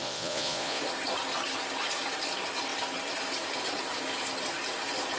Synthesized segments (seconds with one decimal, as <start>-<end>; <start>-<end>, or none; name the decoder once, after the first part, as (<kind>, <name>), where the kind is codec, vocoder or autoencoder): 0.0-0.8 (vocoder, Vocos)